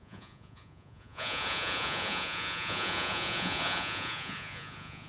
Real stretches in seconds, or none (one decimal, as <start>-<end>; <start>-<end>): none